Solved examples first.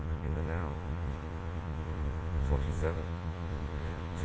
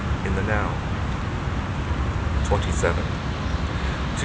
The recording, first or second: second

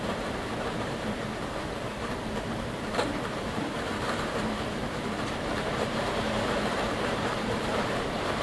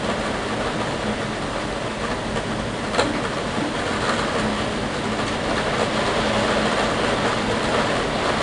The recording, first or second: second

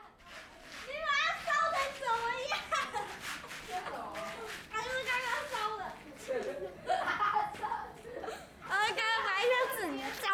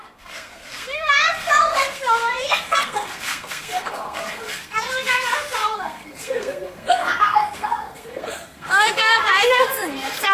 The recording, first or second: first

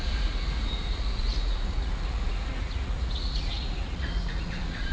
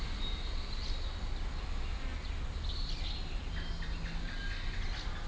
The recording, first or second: second